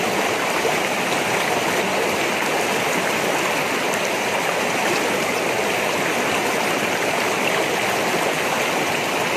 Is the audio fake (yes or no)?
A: no